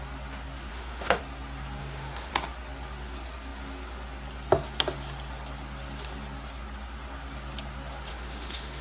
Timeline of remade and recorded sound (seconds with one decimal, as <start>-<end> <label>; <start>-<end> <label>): 0.0-0.7 recorded; 0.7-1.2 remade; 1.2-1.8 recorded; 1.8-2.3 remade; 2.3-8.1 recorded; 8.1-8.8 remade